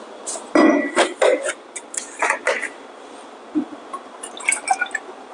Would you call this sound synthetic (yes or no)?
no